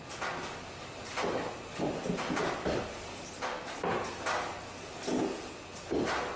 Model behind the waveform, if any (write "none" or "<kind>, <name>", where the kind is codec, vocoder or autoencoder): none